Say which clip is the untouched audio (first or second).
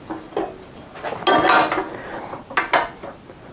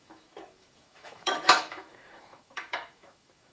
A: first